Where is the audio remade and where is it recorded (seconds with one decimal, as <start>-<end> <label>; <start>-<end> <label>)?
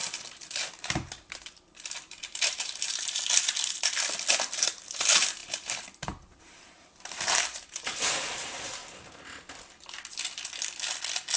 0.0-3.2 remade; 3.2-4.5 recorded; 4.5-8.8 remade; 8.8-11.4 recorded